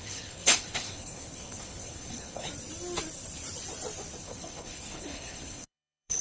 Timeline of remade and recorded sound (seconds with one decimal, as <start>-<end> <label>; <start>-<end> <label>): 0.0-2.5 remade; 2.5-4.2 recorded; 4.2-6.2 remade